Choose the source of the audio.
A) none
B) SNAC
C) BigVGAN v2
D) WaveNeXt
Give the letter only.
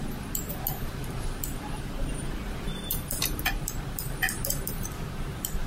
C